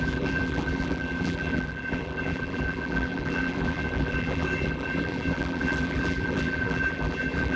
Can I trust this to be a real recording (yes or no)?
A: no